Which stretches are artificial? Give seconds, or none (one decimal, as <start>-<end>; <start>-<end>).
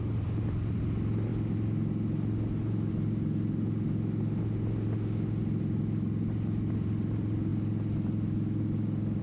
none